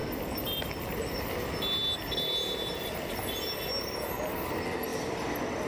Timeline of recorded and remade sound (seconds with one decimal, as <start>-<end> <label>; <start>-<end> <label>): 0.0-5.7 recorded